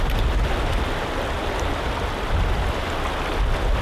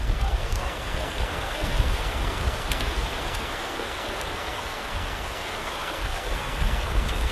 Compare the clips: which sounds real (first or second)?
first